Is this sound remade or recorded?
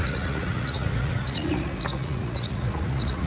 remade